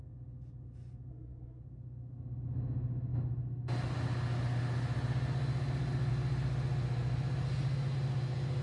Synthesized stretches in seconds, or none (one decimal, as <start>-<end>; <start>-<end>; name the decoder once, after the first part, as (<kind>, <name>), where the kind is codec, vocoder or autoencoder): 1.1-1.6 (codec, SNAC)